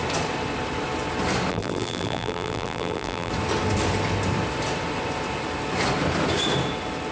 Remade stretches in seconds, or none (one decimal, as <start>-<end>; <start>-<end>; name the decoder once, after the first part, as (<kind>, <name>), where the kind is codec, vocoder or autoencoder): 1.5-3.3 (vocoder, BigVGAN v2)